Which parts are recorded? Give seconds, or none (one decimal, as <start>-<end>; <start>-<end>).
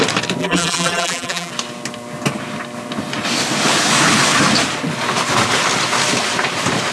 0.0-0.4; 1.5-6.9